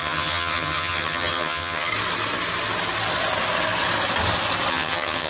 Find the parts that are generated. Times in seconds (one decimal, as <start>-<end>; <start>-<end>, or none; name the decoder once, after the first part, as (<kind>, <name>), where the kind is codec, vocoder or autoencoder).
0.0-1.9 (vocoder, HiFi-GAN); 4.7-5.3